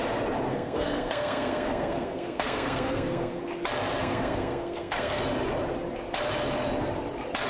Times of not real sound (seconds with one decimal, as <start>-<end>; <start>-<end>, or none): 0.5-3.4; 4.0-5.2